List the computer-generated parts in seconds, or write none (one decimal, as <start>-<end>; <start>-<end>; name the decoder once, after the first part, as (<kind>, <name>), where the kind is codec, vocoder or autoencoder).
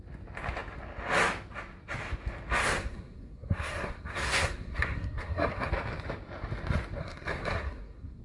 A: 2.6-5.7 (codec, SNAC); 7.0-8.2